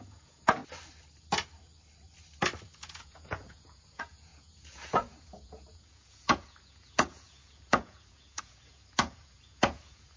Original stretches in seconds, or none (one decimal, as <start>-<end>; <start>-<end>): 0.6-2.6